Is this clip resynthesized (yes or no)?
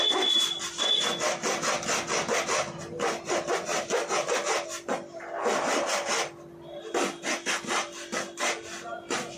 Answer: no